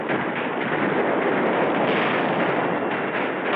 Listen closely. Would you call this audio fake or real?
real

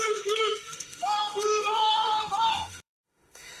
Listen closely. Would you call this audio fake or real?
fake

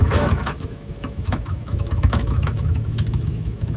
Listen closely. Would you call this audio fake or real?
fake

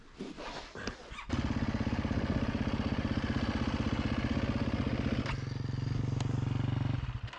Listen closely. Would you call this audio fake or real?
real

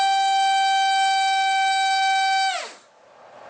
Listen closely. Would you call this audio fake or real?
real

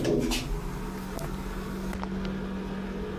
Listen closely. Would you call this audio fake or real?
real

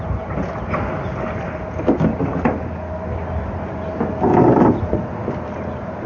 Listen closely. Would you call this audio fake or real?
real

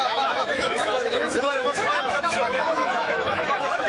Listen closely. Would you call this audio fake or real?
fake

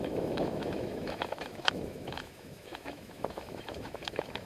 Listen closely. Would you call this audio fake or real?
fake